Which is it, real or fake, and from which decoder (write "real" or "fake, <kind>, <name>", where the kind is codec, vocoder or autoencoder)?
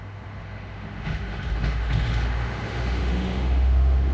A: fake, autoencoder, DAC-VAE